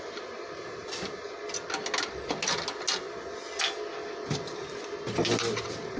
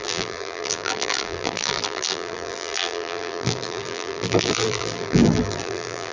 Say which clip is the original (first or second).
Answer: first